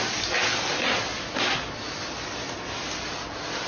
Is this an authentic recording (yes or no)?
yes